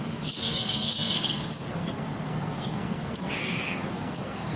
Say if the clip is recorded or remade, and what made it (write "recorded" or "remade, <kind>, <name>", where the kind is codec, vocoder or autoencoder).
remade, codec, SNAC